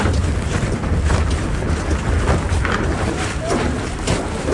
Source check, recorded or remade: recorded